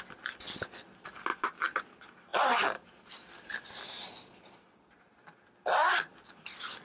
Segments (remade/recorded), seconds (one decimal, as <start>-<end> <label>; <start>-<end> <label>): 0.0-1.3 recorded; 1.3-1.9 remade; 1.9-2.3 recorded; 2.3-3.2 remade; 3.2-6.1 recorded; 6.1-6.8 remade